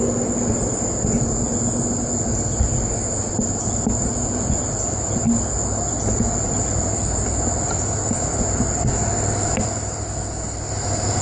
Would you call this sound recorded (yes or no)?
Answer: yes